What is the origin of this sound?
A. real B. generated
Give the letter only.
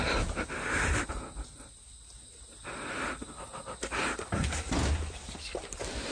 A